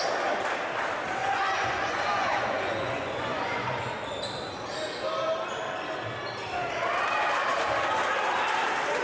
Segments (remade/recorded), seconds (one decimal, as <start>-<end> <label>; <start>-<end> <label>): 0.0-1.2 recorded; 1.2-4.0 remade; 4.0-9.0 recorded